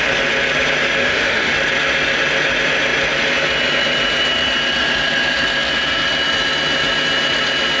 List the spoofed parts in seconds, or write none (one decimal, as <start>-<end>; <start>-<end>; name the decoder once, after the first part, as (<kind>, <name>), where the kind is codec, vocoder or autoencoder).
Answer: 1.0-1.5 (autoencoder, DAC-VAE)